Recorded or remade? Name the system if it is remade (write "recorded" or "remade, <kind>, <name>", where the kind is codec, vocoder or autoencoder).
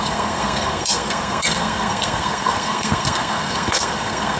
remade, codec, SNAC